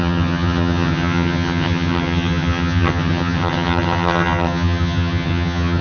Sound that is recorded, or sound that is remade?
remade